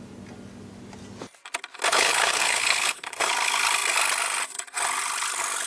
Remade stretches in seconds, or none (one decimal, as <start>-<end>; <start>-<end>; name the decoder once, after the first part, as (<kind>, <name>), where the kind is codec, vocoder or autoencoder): 1.9-3.3 (codec, HILCodec)